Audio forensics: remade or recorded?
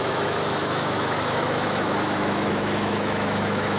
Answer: remade